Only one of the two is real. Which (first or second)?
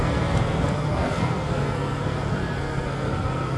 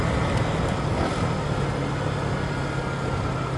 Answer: second